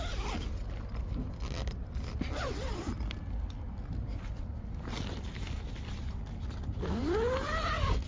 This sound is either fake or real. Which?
real